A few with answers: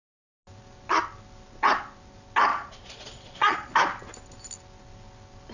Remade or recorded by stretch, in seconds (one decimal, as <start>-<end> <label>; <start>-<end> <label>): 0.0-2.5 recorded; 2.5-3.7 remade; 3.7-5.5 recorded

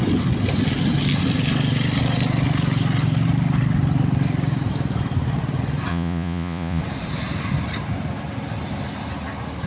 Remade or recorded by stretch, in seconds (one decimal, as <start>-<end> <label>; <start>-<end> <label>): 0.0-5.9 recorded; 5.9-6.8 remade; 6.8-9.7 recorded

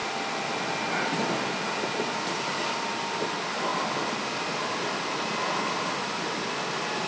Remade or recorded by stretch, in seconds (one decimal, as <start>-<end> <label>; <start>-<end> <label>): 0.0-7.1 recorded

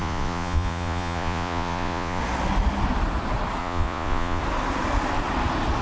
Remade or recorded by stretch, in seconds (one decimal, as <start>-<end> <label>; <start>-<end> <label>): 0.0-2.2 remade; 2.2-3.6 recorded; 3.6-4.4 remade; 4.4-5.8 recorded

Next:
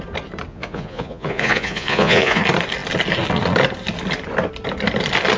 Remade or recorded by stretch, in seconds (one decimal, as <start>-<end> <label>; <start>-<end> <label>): 0.0-0.5 recorded; 0.5-2.4 remade; 2.4-5.4 recorded